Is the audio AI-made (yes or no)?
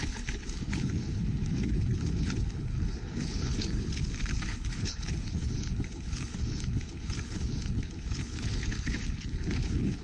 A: yes